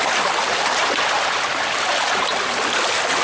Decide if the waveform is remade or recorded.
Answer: recorded